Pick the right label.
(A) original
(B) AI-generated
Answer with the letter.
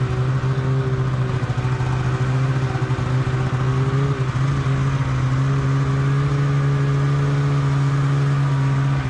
A